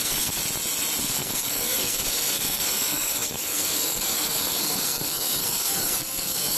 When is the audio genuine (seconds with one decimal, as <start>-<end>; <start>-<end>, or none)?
0.4-1.0